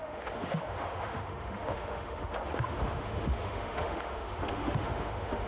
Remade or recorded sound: remade